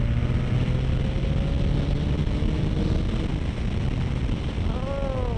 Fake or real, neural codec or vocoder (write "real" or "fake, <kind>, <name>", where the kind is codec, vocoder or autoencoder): real